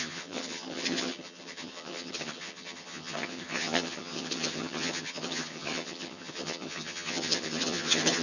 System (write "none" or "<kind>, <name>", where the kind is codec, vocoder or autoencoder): vocoder, HiFi-GAN